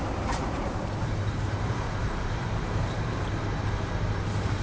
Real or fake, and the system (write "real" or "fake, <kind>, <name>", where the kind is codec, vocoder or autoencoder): fake, vocoder, BigVGAN v2